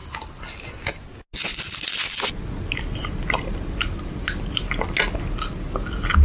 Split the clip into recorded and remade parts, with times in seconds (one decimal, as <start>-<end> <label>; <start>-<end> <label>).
0.0-6.2 recorded